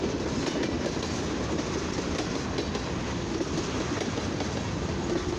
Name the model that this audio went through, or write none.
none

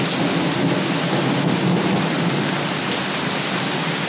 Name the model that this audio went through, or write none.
none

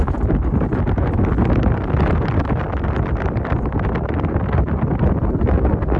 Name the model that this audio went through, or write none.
none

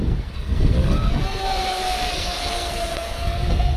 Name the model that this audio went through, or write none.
codec, SNAC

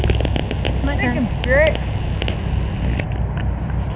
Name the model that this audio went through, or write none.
none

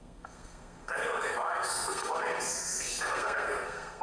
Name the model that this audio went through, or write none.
codec, SNAC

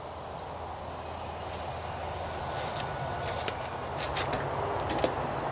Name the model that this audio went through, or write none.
none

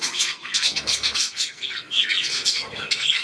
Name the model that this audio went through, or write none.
codec, SNAC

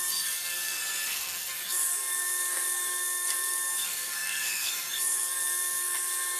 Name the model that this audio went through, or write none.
codec, SNAC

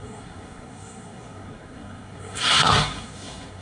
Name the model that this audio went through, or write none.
codec, SNAC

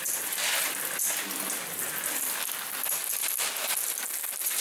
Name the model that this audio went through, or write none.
none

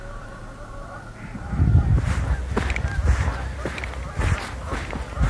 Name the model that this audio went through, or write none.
none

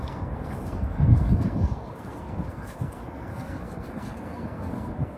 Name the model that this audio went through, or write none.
codec, SNAC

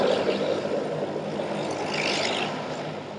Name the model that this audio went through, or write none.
none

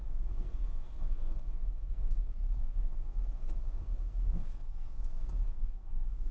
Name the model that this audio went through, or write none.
codec, SNAC